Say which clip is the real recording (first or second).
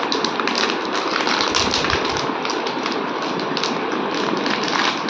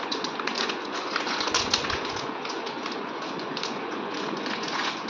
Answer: first